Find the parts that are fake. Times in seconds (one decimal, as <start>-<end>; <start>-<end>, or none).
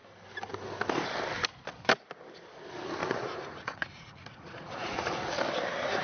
3.0-5.1